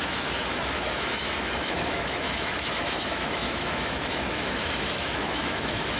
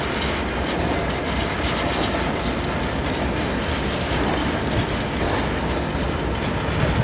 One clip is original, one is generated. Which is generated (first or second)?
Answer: first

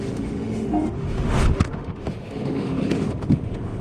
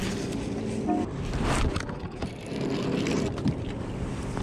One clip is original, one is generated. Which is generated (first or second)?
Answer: first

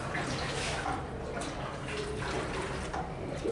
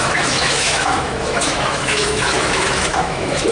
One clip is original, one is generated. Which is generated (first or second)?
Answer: second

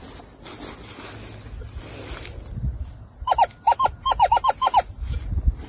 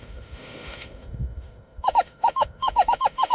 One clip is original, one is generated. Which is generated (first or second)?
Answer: second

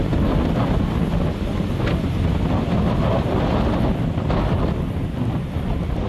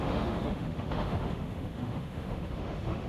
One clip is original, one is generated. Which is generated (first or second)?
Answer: second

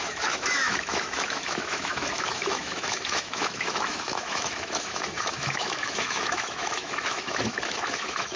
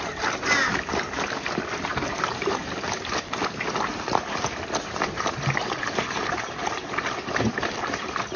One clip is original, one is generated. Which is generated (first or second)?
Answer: first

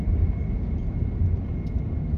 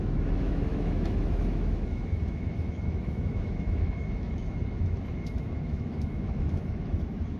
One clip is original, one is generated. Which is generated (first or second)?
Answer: second